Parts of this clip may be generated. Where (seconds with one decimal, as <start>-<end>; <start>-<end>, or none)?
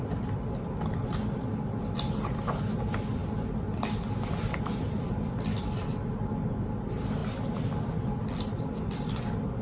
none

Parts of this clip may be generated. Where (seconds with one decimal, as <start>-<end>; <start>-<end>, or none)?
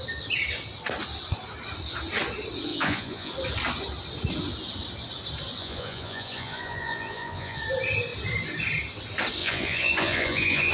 2.7-3.3; 5.6-7.6; 9.4-10.7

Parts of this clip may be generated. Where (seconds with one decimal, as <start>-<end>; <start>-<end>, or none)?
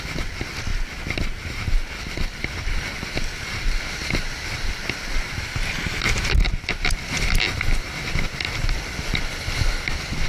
none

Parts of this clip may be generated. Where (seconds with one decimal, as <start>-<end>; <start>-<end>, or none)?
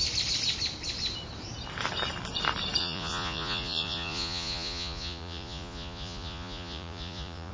2.8-7.5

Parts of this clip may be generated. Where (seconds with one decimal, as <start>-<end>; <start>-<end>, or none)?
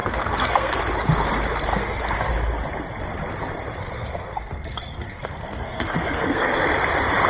0.0-0.8; 1.7-2.3; 3.8-6.7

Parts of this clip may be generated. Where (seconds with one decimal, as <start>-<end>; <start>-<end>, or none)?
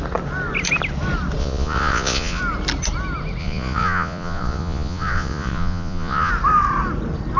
1.4-2.4; 3.4-6.3